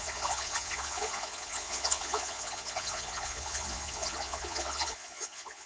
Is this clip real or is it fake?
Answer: fake